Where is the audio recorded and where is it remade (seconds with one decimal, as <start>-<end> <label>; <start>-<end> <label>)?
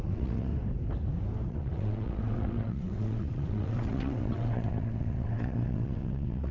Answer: 0.0-0.5 remade; 0.5-1.5 recorded; 1.5-6.5 remade